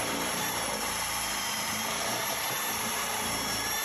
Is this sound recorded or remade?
remade